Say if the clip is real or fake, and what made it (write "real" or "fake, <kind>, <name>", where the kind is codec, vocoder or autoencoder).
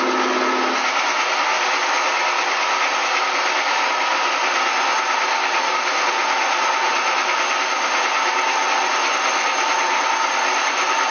real